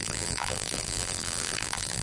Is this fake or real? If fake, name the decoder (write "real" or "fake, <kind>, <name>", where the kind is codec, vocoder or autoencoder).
fake, vocoder, BigVGAN v2